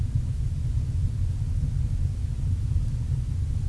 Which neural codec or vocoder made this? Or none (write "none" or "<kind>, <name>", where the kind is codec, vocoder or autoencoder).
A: none